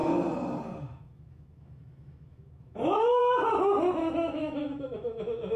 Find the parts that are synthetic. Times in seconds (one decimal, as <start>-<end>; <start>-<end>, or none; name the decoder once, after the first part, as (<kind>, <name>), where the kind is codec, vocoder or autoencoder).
0.8-3.2 (autoencoder, DAC-VAE); 3.9-5.6